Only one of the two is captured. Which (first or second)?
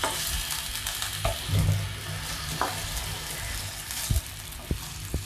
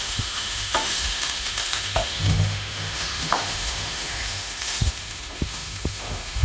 first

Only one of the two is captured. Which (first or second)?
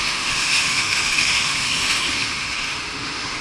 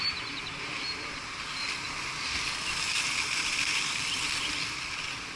second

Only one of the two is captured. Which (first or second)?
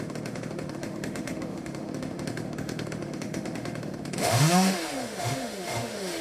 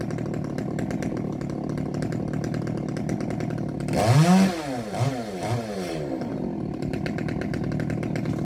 second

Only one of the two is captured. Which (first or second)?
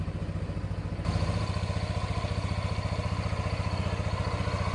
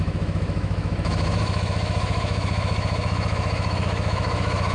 first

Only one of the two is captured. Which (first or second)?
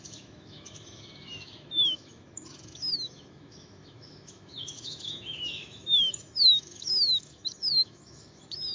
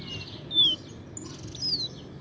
second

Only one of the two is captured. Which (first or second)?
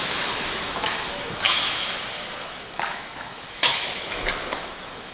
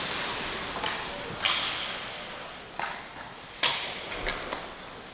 second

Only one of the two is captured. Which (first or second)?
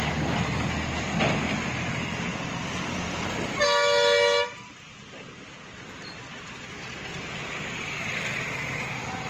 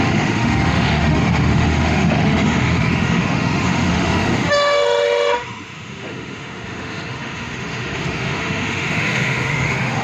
first